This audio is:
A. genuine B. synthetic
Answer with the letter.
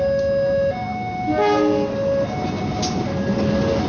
A